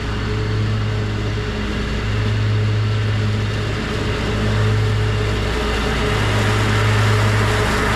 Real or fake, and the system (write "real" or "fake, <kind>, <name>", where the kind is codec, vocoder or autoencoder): real